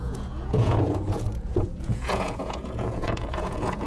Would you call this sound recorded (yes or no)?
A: no